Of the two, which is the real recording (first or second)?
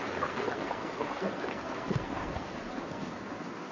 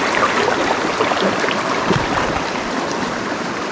second